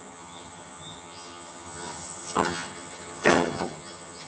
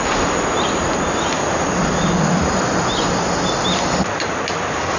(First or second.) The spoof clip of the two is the first